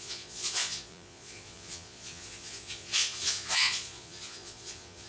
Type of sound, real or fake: fake